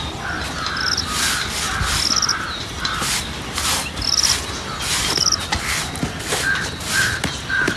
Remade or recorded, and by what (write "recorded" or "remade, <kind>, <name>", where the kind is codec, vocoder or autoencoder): recorded